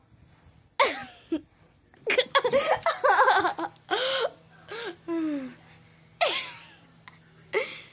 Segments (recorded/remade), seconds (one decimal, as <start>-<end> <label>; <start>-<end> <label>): 0.0-1.0 recorded; 1.0-4.7 remade; 4.7-5.5 recorded; 5.5-6.4 remade; 6.4-7.9 recorded